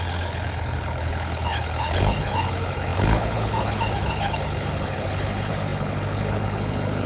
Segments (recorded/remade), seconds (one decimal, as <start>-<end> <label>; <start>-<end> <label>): 0.0-7.1 remade